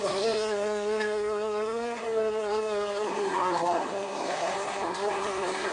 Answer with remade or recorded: remade